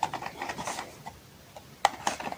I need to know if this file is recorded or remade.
recorded